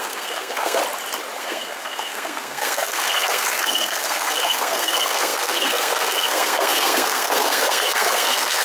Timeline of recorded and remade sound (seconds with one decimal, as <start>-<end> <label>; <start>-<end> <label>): 0.0-0.8 remade; 0.8-1.4 recorded; 1.4-8.6 remade